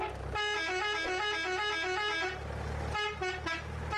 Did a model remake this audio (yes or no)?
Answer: no